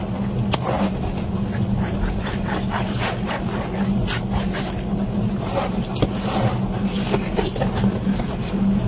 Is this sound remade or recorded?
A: recorded